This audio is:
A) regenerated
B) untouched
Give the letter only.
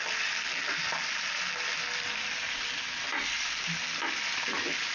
B